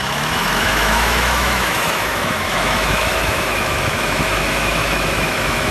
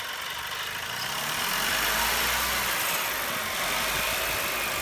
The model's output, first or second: first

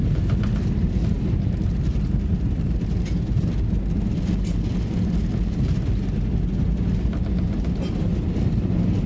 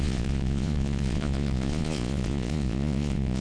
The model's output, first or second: second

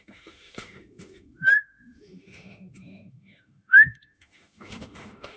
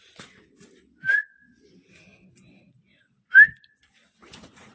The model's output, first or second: first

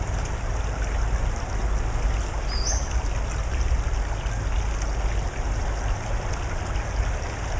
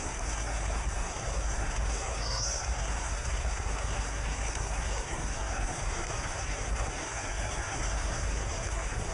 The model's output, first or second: second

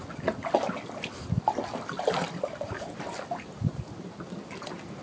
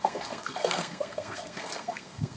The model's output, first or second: second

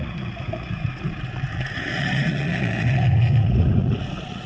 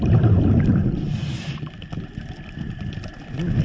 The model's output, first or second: first